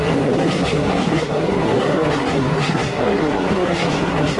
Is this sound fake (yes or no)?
yes